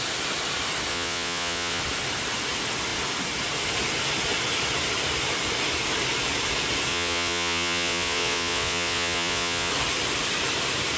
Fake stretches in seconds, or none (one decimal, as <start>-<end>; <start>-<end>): 0.9-1.8; 6.9-9.7